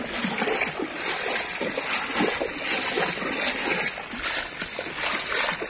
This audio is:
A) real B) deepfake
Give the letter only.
A